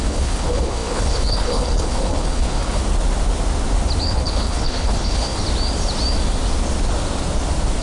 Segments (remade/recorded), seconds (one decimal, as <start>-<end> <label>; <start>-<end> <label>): 0.0-2.8 remade; 2.8-4.0 recorded; 4.0-5.4 remade; 5.4-7.8 recorded